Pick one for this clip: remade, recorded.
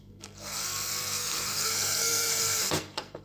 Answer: remade